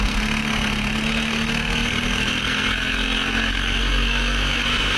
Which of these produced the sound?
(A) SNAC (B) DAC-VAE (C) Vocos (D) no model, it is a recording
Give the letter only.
A